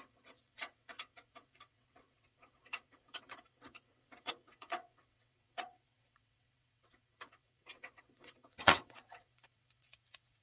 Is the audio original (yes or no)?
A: no